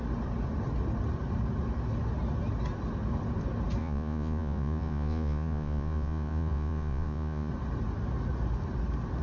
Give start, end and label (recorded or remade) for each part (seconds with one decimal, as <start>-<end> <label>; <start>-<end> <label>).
0.0-3.8 recorded; 3.8-7.5 remade; 7.5-9.2 recorded